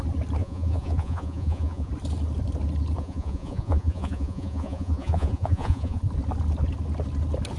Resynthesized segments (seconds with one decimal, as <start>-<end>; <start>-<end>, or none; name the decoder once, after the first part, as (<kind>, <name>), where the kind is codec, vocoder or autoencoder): 0.4-1.9 (vocoder, Vocos); 3.0-6.0